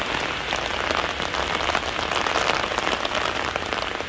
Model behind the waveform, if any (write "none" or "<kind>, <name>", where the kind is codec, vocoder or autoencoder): none